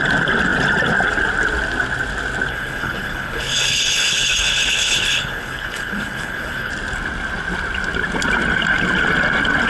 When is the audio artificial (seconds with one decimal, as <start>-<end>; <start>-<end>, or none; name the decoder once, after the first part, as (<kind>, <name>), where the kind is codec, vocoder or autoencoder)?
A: 2.5-6.7 (codec, HILCodec)